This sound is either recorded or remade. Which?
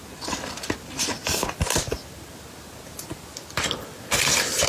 recorded